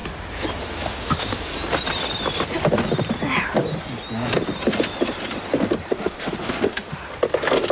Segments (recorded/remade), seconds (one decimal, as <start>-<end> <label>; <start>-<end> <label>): 0.0-0.6 recorded; 0.6-1.5 remade; 1.5-5.9 recorded; 5.9-7.0 remade; 7.0-7.7 recorded